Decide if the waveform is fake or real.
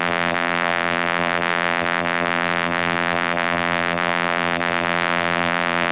fake